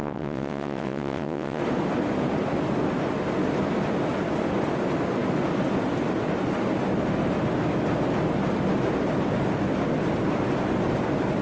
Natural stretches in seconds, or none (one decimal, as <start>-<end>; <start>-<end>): 1.6-11.4